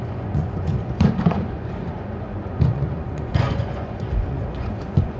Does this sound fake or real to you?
fake